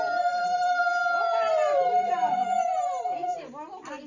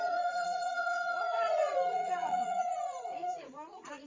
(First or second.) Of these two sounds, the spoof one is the second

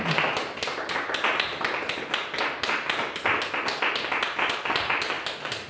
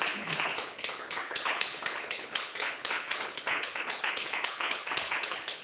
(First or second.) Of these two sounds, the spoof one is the second